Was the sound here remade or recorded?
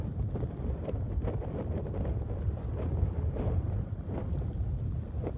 recorded